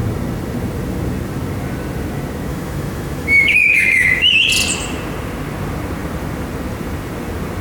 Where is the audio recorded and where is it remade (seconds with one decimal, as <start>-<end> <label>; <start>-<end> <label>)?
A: 0.0-2.5 recorded; 2.5-4.5 remade; 4.5-7.6 recorded